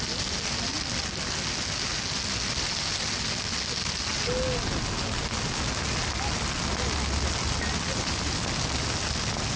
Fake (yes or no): no